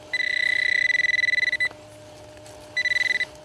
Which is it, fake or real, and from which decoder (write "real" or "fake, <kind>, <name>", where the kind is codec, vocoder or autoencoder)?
fake, vocoder, BigVGAN v2